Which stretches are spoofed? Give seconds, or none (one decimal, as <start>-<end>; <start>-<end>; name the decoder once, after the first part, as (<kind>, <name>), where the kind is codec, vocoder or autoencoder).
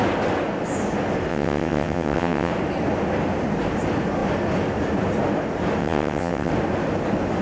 1.3-2.5 (vocoder, WaveNeXt); 5.8-6.5